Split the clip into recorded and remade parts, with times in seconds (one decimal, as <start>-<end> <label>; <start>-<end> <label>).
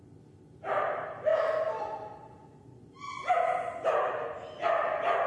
0.0-3.2 recorded; 3.2-4.4 remade; 4.4-5.3 recorded